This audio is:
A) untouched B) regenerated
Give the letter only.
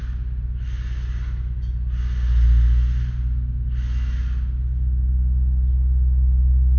A